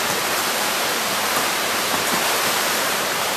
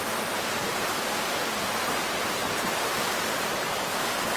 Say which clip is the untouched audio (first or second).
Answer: second